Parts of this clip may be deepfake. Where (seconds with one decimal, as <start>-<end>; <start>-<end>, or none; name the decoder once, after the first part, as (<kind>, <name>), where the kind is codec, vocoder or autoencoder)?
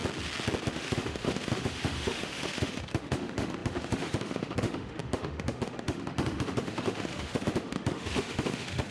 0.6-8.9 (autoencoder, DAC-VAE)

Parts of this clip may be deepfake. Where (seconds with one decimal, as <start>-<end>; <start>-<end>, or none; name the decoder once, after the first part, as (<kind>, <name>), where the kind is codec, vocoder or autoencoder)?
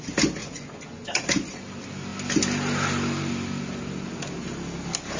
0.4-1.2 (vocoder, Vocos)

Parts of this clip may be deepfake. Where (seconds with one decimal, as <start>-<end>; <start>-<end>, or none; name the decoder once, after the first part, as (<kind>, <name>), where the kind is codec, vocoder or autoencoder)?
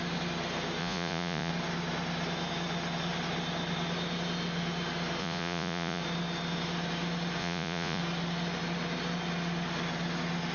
0.8-1.5 (vocoder, Vocos); 5.2-6.0; 7.4-8.0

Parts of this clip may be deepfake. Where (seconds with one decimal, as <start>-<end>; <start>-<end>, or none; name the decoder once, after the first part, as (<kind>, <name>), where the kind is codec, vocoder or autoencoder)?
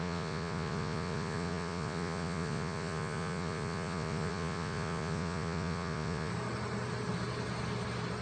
0.0-6.3 (vocoder, Vocos)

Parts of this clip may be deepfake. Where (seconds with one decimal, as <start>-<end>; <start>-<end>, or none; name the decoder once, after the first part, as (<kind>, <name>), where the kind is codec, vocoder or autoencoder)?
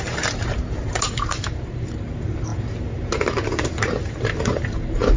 0.0-5.2 (vocoder, BigVGAN v2)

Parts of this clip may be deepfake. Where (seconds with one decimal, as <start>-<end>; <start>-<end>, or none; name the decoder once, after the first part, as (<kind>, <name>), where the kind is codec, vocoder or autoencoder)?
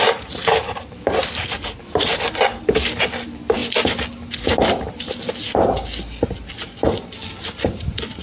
none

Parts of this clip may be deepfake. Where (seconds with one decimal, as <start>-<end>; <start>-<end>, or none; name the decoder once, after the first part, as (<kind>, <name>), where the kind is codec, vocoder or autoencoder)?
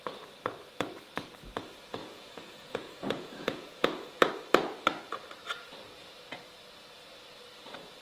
2.0-4.3 (vocoder, Vocos)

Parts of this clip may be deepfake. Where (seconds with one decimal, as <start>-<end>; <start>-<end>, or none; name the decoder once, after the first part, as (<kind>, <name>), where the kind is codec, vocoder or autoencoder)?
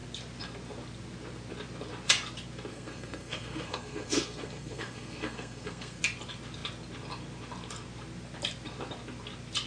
2.7-6.0 (codec, SNAC)